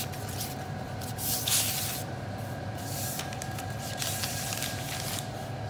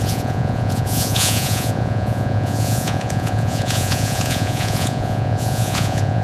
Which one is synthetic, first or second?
second